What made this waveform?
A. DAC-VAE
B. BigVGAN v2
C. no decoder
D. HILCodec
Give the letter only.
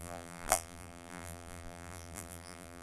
B